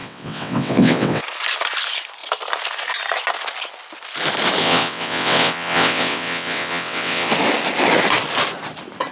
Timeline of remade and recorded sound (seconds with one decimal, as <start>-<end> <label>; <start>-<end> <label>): 0.0-1.2 remade; 1.2-4.6 recorded; 4.6-7.3 remade; 7.3-9.1 recorded